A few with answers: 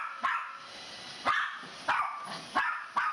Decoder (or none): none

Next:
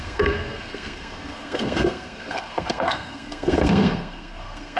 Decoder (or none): codec, SNAC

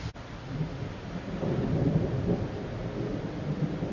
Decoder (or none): none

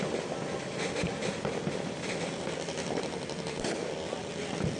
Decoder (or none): none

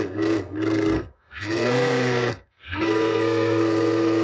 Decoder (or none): codec, SNAC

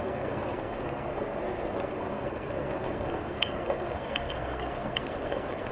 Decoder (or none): codec, SNAC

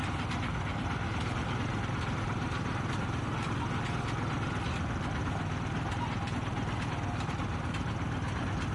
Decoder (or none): none